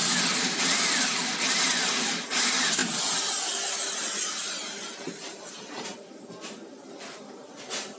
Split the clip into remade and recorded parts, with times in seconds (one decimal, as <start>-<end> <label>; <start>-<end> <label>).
0.0-8.0 recorded